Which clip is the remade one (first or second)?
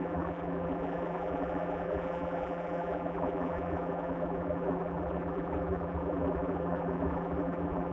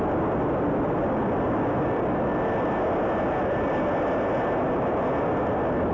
first